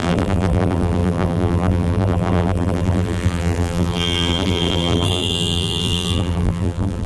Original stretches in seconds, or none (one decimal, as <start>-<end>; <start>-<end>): none